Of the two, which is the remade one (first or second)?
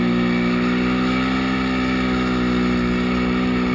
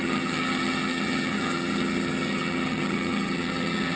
second